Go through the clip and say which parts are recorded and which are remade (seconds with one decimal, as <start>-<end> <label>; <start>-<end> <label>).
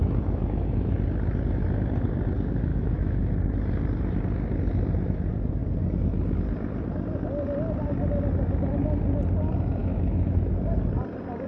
0.0-0.9 remade; 0.9-2.7 recorded; 2.7-3.2 remade; 3.2-9.8 recorded; 9.8-10.5 remade; 10.5-11.5 recorded